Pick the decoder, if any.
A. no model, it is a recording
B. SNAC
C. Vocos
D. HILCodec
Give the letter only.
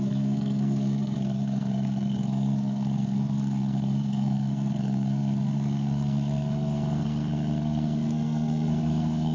B